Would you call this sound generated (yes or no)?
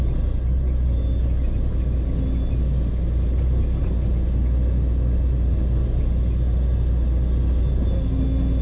no